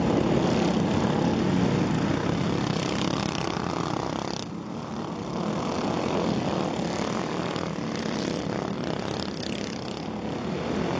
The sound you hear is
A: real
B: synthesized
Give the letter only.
A